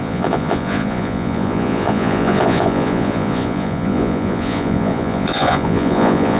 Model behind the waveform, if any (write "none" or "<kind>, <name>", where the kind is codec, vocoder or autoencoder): vocoder, Vocos